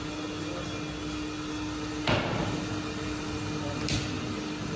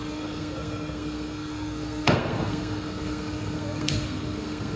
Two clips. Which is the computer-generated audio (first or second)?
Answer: second